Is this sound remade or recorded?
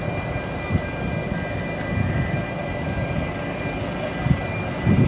recorded